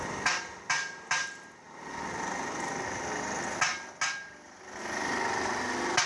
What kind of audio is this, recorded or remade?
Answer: recorded